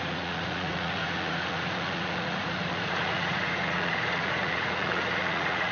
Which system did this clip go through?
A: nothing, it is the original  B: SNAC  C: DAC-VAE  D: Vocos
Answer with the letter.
D